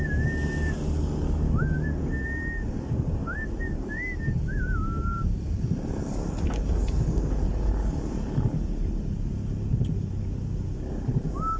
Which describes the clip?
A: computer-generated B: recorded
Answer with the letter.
B